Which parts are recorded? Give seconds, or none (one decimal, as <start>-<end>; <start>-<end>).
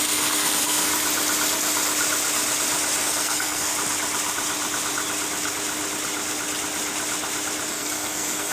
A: 0.9-3.0; 3.7-7.7